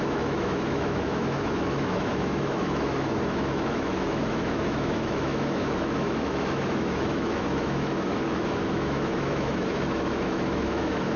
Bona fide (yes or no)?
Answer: no